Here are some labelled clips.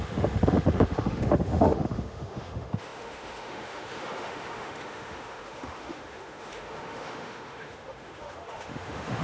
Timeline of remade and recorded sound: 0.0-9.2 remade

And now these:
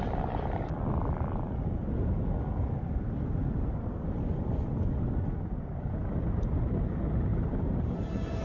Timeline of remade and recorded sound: 0.0-8.4 recorded

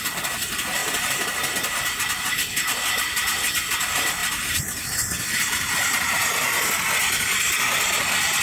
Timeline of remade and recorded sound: 0.0-0.8 recorded; 0.8-1.4 remade; 1.4-4.2 recorded; 4.2-6.7 remade; 6.7-8.4 recorded

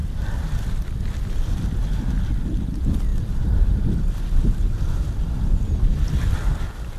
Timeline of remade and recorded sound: 0.0-7.0 recorded

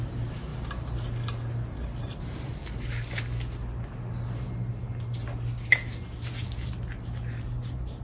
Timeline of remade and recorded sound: 0.0-0.5 remade; 0.5-2.2 recorded; 2.2-2.6 remade; 2.6-7.4 recorded; 7.4-8.0 remade

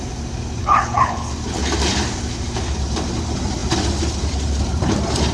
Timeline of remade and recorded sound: 0.0-0.6 recorded; 0.6-1.3 remade; 1.3-5.3 recorded